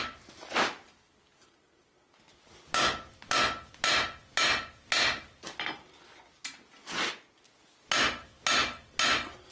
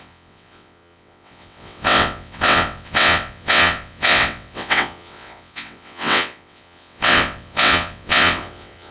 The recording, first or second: first